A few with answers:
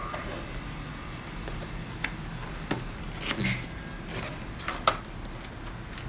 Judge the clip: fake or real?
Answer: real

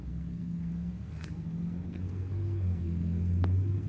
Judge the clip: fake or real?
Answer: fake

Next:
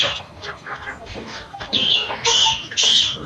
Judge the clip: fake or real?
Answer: fake